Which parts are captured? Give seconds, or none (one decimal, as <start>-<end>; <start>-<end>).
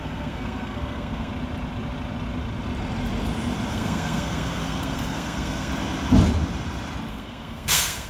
1.3-3.7; 5.7-7.1